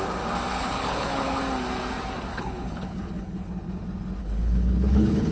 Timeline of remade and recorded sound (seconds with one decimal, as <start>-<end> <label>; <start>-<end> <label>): 0.0-0.5 recorded; 0.5-1.4 remade; 1.4-2.3 recorded; 2.3-3.5 remade; 3.5-4.2 recorded; 4.2-5.3 remade